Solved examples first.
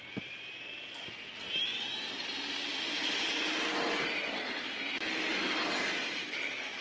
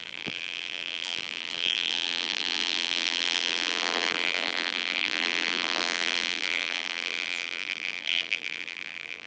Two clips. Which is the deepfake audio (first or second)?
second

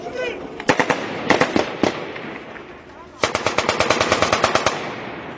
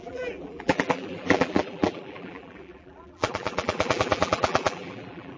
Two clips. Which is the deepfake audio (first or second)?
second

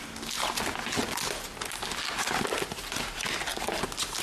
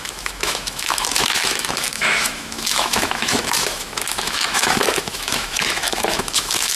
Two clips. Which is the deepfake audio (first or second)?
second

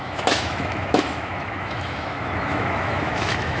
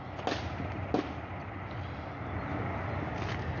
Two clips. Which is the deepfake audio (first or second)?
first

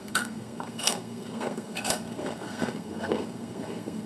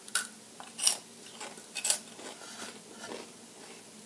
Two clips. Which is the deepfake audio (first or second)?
first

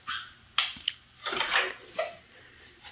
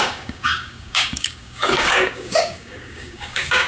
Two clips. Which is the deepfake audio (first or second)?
second